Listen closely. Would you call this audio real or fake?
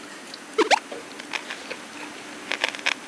real